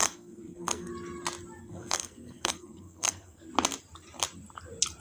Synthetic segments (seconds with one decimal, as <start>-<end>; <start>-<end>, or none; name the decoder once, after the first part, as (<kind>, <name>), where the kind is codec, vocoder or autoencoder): 0.0-0.9 (codec, SNAC); 1.6-3.5